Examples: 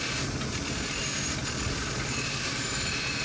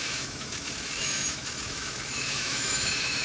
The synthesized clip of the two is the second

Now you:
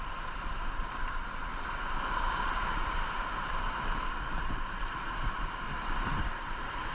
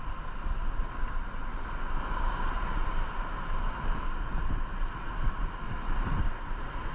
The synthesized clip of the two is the first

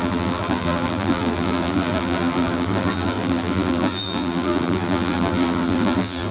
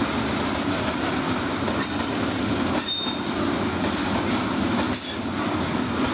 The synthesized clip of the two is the first